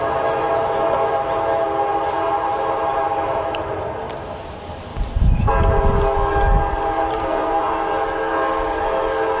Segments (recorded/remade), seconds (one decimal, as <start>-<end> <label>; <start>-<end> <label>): 0.0-7.1 recorded; 7.1-7.6 remade; 7.6-9.4 recorded